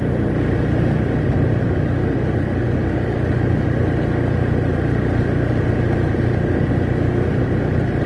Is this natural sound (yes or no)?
yes